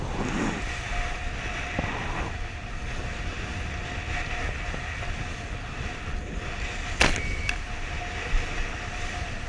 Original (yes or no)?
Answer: yes